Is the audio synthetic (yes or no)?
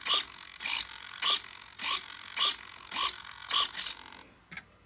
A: no